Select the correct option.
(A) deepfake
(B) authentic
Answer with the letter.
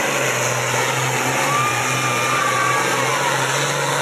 B